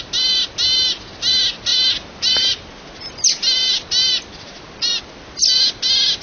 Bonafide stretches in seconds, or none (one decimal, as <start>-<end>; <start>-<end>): 0.0-6.2